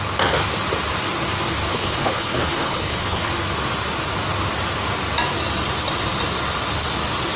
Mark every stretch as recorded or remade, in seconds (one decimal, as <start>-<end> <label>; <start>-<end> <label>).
0.0-1.7 recorded; 1.7-3.3 remade; 3.3-7.4 recorded